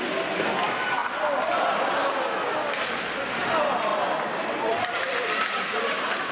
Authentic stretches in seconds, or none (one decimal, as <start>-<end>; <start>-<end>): 0.0-6.3